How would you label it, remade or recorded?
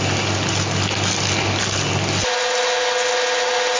recorded